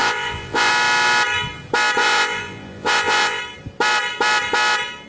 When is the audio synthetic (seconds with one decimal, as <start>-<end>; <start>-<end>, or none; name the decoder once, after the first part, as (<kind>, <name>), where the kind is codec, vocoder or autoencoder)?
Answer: 0.0-0.7 (vocoder, Vocos); 2.0-3.4